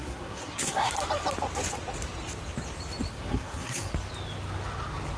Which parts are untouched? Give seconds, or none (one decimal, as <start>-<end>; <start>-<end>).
0.9-3.1; 3.9-5.2